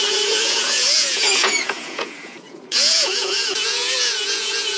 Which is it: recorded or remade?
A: remade